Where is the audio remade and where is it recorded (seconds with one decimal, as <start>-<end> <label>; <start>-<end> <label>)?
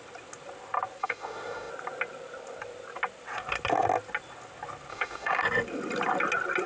0.0-1.0 recorded; 1.0-1.7 remade; 1.7-4.9 recorded; 4.9-5.4 remade; 5.4-6.7 recorded